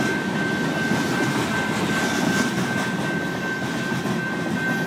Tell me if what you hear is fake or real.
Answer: real